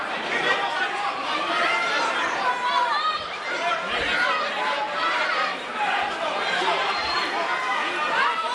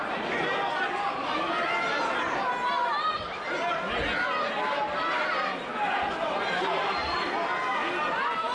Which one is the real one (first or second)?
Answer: second